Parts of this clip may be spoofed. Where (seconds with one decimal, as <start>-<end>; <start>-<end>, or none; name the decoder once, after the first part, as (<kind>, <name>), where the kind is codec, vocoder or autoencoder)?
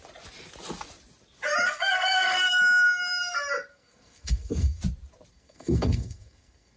1.6-2.6 (codec, SNAC); 3.7-4.8; 5.3-6.8